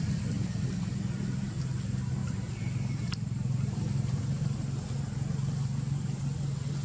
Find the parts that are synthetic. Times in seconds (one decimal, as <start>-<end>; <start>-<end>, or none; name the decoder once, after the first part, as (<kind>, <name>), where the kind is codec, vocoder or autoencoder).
2.2-4.2 (vocoder, BigVGAN v2)